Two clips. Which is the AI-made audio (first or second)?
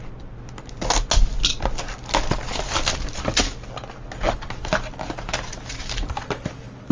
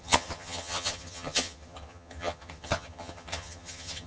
second